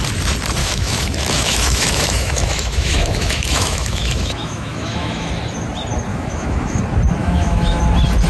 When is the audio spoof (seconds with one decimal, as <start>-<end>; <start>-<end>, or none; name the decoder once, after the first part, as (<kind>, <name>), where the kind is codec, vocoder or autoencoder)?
0.6-5.3 (autoencoder, DAC-VAE); 6.1-6.8; 7.2-7.8